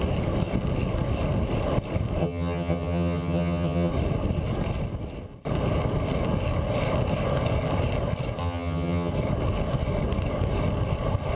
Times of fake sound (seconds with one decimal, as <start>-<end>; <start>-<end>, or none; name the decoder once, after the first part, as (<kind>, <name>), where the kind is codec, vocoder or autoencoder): 2.2-3.9 (vocoder, HiFi-GAN); 8.4-9.1